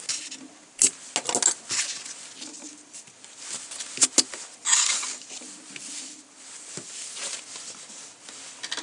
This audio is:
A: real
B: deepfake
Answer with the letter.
A